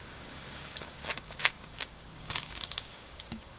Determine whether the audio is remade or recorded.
remade